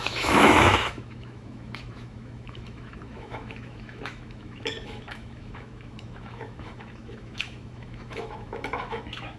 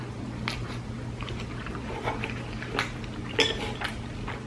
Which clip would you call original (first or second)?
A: second